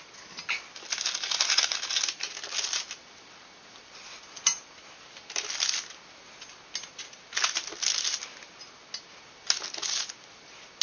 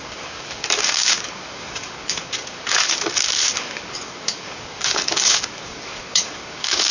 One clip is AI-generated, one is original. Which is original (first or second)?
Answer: first